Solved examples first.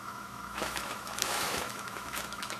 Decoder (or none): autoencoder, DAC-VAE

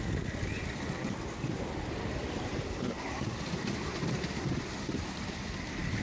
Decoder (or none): none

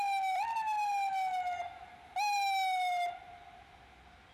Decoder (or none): none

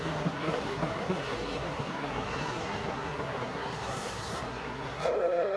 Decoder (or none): codec, SNAC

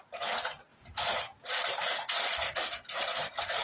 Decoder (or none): none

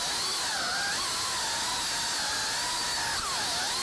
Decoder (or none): none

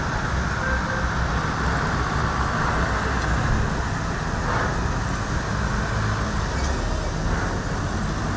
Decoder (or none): none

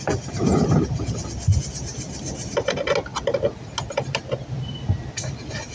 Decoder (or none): none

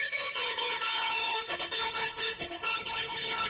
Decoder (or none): codec, HILCodec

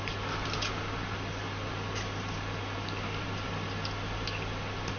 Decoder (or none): none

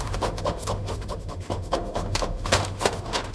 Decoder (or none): autoencoder, DAC-VAE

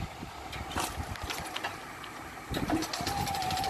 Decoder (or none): none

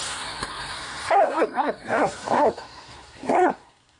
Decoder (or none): codec, SNAC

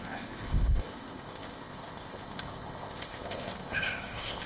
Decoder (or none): codec, ZipCodec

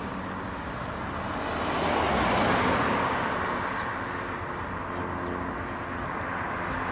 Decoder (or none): none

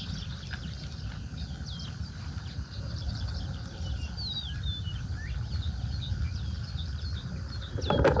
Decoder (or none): none